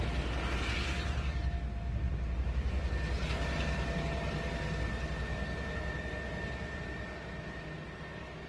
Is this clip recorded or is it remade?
recorded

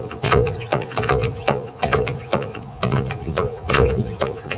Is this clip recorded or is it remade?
remade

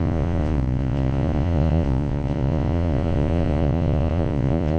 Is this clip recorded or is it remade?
remade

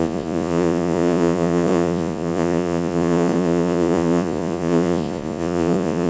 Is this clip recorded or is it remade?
remade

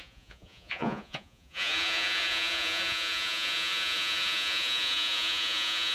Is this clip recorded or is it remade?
remade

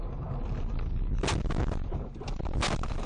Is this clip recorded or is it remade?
recorded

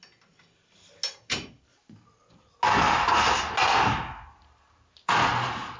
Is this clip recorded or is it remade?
recorded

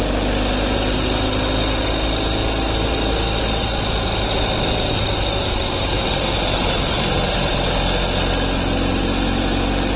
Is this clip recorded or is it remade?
recorded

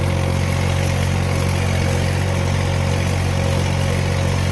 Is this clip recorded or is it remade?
recorded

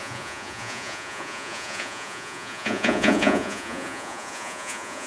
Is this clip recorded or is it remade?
remade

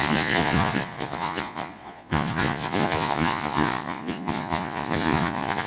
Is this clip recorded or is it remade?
remade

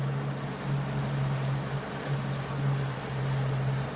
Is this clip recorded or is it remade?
recorded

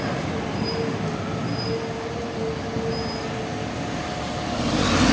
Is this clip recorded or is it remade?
recorded